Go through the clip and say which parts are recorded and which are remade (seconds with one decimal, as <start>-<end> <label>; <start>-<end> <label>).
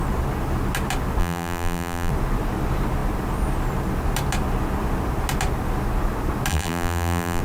0.0-1.2 recorded; 1.2-2.1 remade; 2.1-6.5 recorded; 6.5-7.4 remade